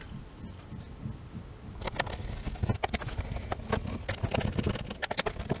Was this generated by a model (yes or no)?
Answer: no